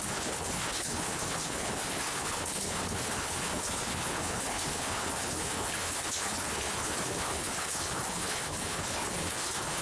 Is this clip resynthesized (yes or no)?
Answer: yes